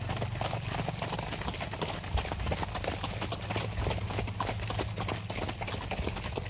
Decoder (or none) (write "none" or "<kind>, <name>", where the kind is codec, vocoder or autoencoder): none